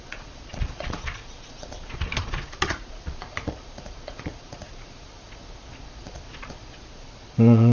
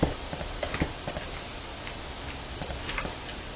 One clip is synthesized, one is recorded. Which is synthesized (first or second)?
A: first